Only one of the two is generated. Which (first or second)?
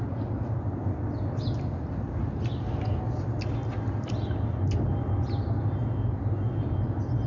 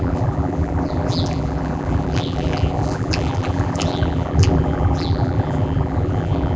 second